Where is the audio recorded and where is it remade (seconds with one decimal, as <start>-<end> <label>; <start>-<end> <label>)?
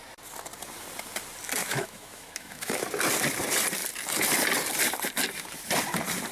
0.0-1.6 recorded; 1.6-2.8 remade; 2.8-6.3 recorded